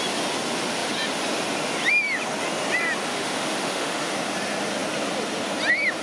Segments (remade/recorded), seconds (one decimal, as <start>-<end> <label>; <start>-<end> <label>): 0.0-3.1 recorded; 3.1-4.1 remade; 4.1-6.0 recorded